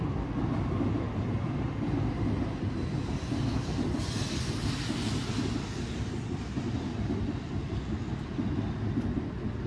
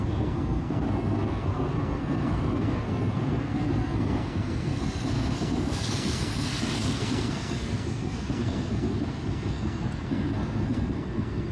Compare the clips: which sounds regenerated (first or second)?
second